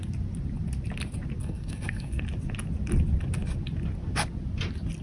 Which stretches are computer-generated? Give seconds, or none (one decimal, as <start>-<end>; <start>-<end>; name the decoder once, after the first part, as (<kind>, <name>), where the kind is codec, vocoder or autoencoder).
1.4-2.2 (codec, SNAC)